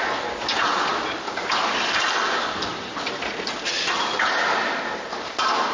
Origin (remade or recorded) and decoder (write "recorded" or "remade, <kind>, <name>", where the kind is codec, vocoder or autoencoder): recorded